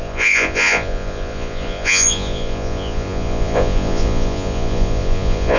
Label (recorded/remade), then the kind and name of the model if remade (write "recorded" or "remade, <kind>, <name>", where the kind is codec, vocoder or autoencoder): remade, vocoder, Vocos